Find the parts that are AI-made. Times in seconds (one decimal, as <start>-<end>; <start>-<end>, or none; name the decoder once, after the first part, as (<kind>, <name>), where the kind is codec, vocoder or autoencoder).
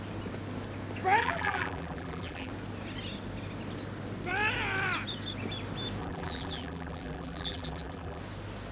1.2-2.5 (vocoder, BigVGAN v2); 6.0-8.2